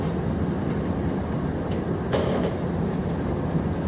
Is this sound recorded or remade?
recorded